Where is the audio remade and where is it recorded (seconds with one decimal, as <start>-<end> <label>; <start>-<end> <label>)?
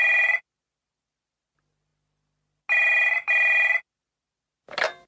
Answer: 0.0-5.1 recorded